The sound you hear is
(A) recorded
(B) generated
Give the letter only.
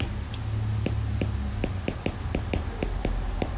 A